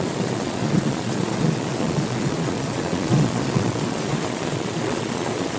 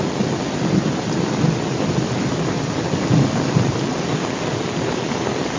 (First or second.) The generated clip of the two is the first